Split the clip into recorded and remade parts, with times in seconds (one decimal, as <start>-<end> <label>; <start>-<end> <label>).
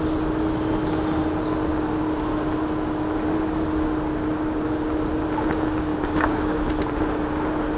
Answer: 0.0-5.9 recorded; 5.9-6.6 remade; 6.6-7.8 recorded